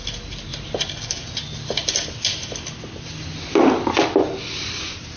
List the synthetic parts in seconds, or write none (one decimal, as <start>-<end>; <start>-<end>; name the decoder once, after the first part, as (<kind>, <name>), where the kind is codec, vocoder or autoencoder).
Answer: none